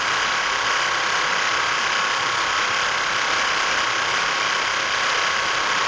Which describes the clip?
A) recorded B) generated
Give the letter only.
A